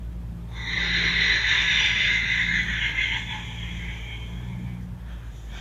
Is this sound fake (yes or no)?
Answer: no